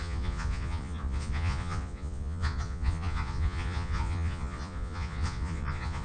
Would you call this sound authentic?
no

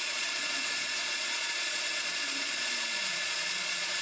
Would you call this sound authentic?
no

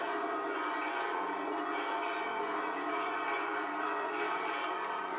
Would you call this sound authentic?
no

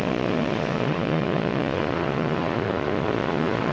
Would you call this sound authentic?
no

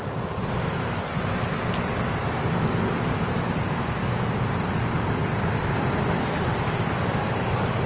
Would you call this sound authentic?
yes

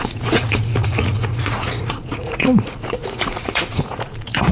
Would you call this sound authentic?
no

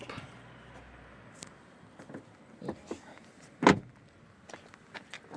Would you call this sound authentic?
yes